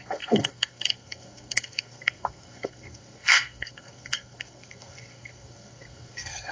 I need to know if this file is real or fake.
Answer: fake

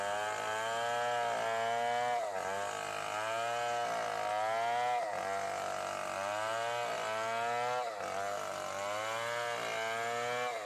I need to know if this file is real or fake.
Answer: real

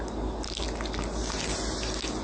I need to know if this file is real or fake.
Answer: real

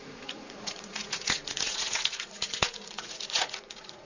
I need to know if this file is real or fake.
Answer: fake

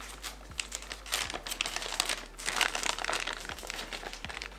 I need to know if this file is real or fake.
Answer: real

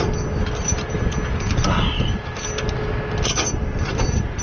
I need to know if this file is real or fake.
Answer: real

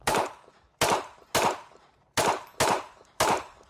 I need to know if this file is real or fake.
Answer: fake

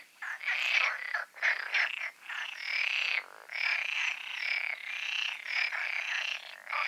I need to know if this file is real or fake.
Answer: real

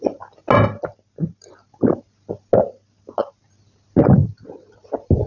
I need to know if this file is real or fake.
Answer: real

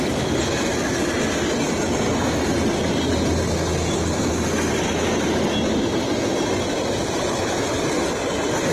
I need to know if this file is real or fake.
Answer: real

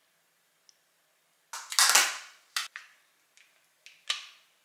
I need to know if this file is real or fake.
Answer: real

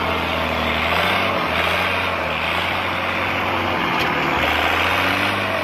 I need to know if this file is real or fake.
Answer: real